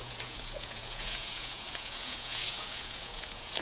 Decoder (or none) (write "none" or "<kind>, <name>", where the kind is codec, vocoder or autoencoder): vocoder, Vocos